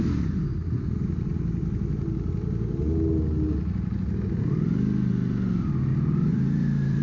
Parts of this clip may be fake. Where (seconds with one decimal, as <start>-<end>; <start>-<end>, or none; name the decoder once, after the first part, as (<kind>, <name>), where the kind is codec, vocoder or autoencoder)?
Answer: 5.9-7.0 (vocoder, BigVGAN v2)